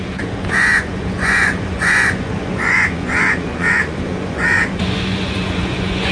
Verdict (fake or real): fake